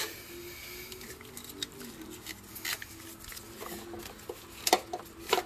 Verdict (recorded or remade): recorded